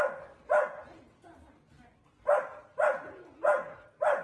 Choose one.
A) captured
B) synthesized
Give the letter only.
A